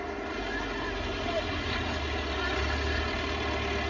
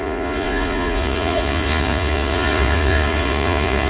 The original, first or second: first